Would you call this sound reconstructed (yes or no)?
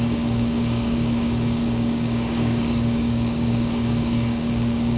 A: yes